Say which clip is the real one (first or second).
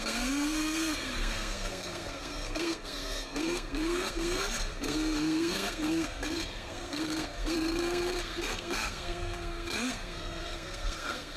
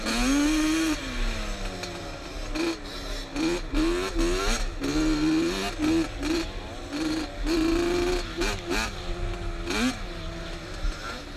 second